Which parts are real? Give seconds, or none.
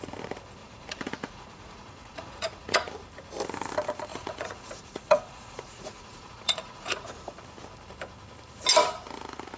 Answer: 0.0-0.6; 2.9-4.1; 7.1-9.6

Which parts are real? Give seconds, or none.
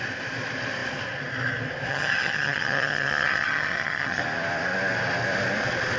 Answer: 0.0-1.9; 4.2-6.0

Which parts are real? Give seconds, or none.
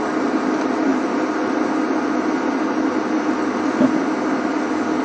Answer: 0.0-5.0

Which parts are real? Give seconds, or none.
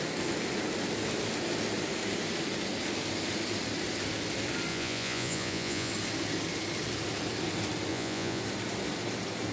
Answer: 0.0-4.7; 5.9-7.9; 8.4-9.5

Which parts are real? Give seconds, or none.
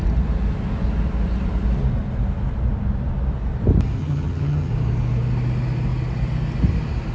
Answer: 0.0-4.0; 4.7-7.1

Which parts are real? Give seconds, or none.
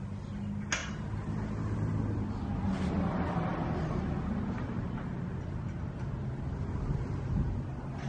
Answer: 0.0-8.1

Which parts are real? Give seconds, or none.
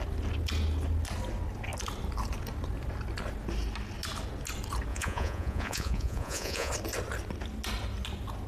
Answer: 0.0-4.9; 6.7-8.5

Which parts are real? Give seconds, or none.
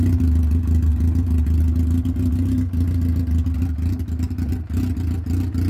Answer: 0.0-5.7